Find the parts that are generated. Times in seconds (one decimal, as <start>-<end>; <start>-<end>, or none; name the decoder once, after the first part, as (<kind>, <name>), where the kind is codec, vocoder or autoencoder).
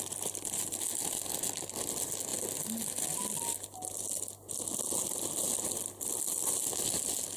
none